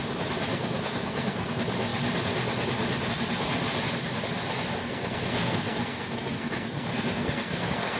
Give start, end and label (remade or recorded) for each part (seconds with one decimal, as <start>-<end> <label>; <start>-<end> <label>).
0.0-0.5 recorded; 0.5-1.5 remade; 1.5-4.8 recorded; 4.8-8.0 remade